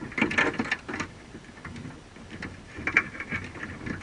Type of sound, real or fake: real